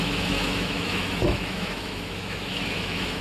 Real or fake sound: fake